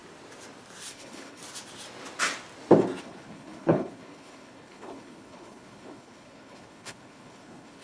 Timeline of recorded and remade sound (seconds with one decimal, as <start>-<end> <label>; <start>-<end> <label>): 0.0-0.9 recorded; 0.9-1.4 remade; 1.4-3.0 recorded; 3.0-7.8 remade